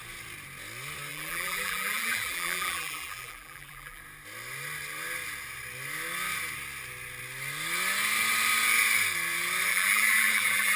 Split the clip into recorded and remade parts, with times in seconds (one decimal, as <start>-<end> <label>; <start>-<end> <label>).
0.0-1.1 recorded; 1.1-4.0 remade; 4.0-9.7 recorded; 9.7-10.8 remade